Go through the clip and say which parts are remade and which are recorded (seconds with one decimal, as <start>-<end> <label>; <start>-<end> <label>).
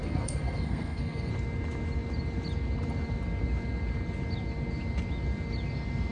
0.0-1.3 remade; 1.3-6.1 recorded